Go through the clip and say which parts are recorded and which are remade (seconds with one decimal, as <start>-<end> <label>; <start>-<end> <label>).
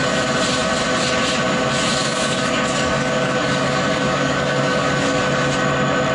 0.0-2.0 recorded; 2.0-5.2 remade; 5.2-6.1 recorded